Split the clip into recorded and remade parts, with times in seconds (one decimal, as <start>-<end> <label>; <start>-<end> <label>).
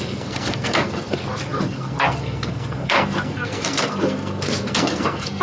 0.0-5.4 remade